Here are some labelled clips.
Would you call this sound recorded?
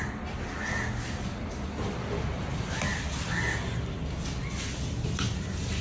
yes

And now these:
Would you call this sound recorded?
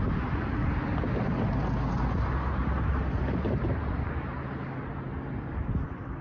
yes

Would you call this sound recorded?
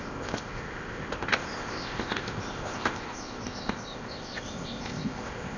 no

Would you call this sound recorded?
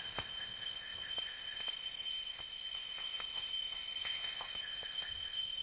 no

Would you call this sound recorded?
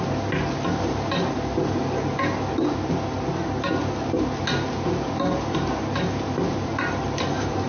yes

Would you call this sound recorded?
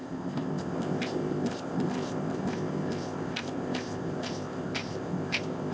no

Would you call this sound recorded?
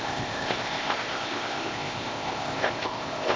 no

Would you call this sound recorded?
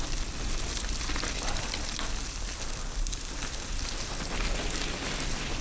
yes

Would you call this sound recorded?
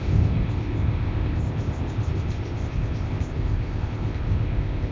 no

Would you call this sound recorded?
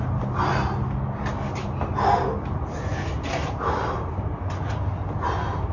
yes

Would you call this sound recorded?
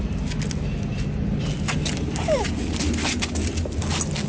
yes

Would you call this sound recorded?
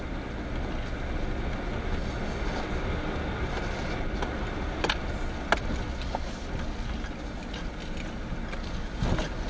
yes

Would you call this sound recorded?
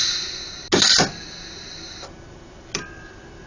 yes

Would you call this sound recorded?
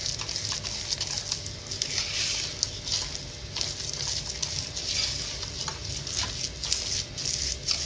yes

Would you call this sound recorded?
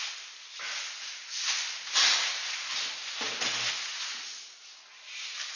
yes